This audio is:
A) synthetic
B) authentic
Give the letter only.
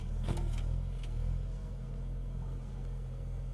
A